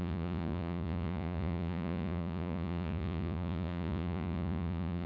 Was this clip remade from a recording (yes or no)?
yes